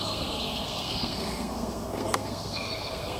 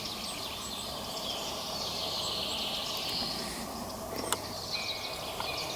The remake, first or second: first